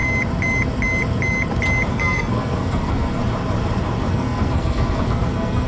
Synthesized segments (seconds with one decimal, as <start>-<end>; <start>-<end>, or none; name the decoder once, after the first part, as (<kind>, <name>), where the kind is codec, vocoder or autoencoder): 1.9-3.2 (codec, SNAC); 4.1-5.7